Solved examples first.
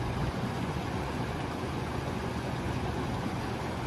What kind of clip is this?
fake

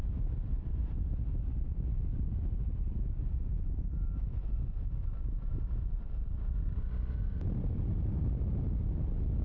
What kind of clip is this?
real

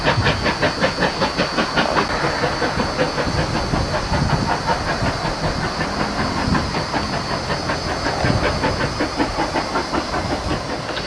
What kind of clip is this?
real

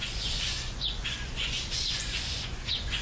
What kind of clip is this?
fake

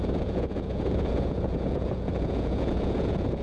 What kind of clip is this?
fake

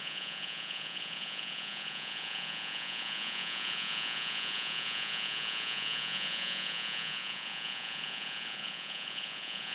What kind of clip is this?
fake